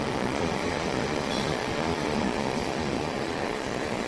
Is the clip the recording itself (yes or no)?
no